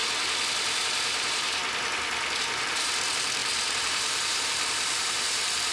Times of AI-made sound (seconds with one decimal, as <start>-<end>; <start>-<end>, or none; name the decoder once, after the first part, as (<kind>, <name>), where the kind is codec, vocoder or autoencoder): 0.5-1.6 (vocoder, BigVGAN v2); 2.4-5.7